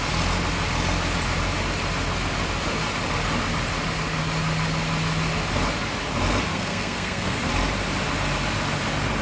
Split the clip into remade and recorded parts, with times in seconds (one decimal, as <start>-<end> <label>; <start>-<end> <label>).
0.0-6.5 recorded; 6.5-7.5 remade; 7.5-9.2 recorded